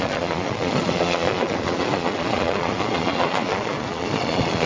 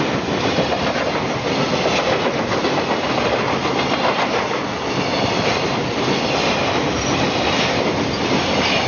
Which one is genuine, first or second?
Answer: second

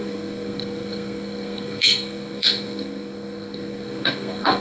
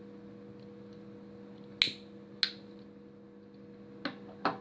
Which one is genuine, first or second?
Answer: second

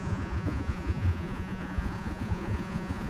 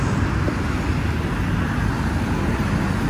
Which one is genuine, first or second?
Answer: second